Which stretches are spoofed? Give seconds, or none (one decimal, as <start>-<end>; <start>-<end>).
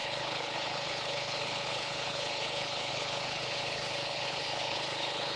0.0-5.4